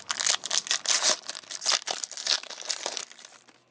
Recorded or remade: recorded